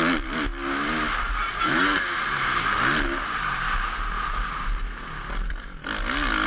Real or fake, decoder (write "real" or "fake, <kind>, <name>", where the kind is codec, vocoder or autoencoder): real